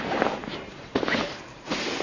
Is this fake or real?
fake